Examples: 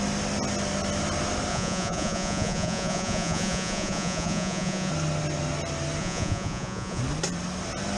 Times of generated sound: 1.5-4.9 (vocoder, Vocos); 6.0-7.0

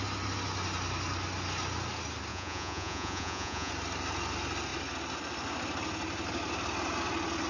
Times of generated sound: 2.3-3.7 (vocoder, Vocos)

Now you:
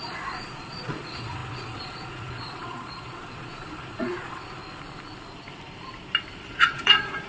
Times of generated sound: 0.0-4.6 (vocoder, Vocos); 6.4-7.3

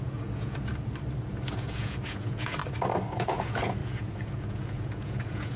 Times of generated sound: 0.0-0.7 (vocoder, Vocos); 1.2-2.6; 3.1-5.6